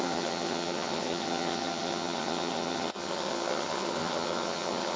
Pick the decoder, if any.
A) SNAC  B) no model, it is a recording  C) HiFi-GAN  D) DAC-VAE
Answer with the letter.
C